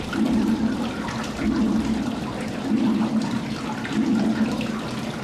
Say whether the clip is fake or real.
real